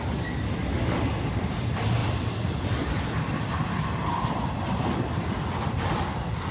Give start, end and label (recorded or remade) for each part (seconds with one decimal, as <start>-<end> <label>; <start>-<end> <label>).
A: 0.0-2.0 recorded; 2.0-5.9 remade; 5.9-6.5 recorded

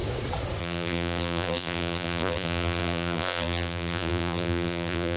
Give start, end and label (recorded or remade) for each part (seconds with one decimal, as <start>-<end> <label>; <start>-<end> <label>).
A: 0.0-0.6 recorded; 0.6-5.2 remade

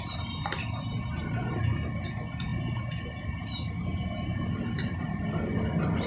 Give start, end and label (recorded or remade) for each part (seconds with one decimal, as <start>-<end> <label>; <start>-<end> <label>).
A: 0.0-1.6 remade; 1.6-2.5 recorded; 2.5-5.5 remade; 5.5-6.1 recorded

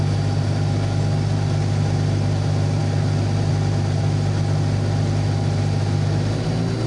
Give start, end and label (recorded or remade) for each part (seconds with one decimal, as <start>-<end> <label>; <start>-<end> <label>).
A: 0.0-6.9 recorded

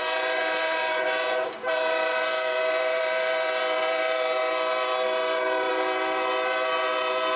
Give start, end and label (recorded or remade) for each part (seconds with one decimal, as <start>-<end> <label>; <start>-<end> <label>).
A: 0.0-7.4 remade